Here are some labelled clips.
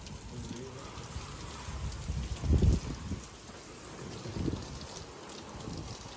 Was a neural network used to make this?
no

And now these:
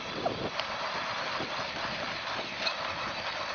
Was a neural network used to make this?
no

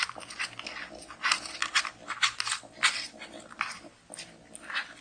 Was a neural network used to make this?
no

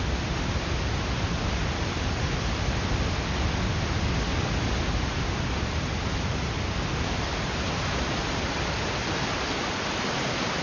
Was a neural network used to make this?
no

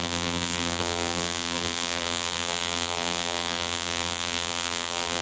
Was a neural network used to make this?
yes